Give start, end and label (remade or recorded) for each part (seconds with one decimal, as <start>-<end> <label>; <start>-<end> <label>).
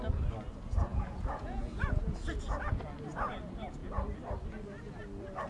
0.0-0.9 recorded; 0.9-2.7 remade; 2.7-5.5 recorded